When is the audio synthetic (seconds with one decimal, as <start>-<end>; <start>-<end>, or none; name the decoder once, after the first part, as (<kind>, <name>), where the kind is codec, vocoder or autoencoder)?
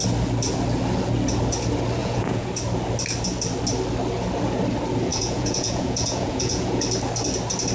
2.0-2.5 (vocoder, Vocos); 5.1-6.8